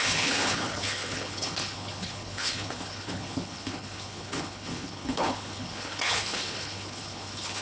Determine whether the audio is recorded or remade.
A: remade